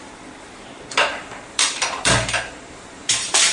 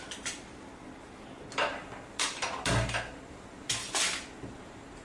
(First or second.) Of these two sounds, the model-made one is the first